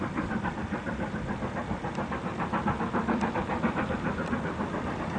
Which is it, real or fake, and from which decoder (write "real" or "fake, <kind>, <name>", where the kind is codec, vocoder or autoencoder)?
fake, vocoder, BigVGAN v2